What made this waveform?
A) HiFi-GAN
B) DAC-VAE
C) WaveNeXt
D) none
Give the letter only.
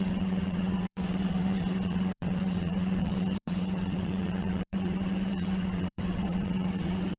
C